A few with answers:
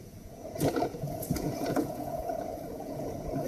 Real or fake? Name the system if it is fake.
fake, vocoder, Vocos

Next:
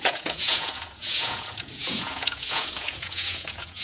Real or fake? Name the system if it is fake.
fake, vocoder, Vocos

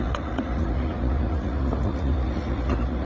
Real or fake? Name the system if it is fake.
fake, vocoder, Vocos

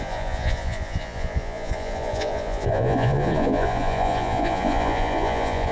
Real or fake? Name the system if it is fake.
fake, vocoder, Vocos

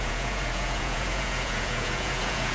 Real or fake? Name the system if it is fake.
fake, vocoder, Vocos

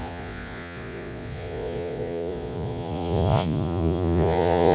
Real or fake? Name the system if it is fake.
fake, vocoder, Vocos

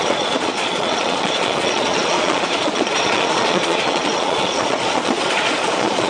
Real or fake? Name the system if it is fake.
fake, vocoder, Vocos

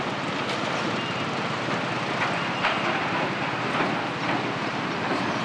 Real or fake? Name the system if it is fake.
real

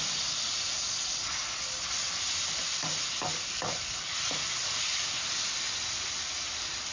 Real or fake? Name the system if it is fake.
real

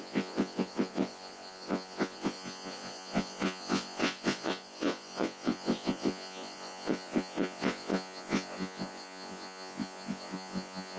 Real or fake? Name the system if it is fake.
fake, vocoder, Vocos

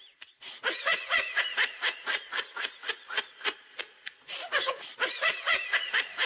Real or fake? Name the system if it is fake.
fake, vocoder, Vocos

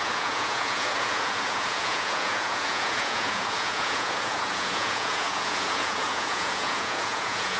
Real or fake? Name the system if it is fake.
fake, vocoder, Vocos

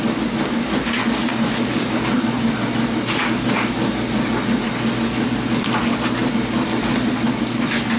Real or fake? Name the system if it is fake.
real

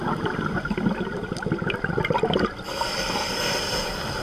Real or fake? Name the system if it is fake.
real